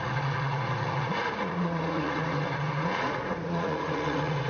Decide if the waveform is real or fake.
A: fake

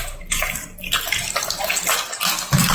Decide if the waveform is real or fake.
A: real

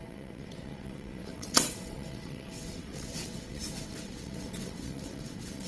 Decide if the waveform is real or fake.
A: fake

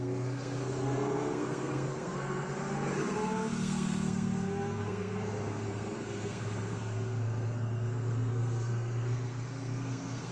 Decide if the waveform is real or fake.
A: fake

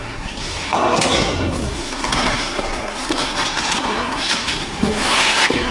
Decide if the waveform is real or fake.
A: fake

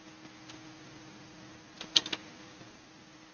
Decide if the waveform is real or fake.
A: real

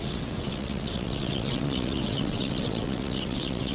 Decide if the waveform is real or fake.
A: fake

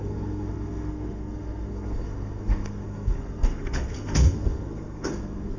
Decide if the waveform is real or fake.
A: fake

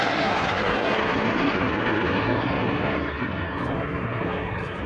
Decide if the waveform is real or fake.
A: fake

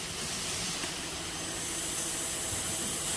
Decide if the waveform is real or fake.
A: real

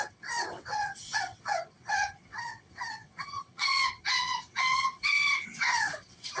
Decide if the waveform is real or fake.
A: fake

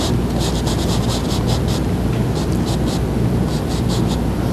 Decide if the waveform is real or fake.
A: real